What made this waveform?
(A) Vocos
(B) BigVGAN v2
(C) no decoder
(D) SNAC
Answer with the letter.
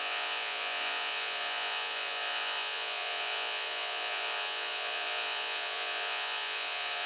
A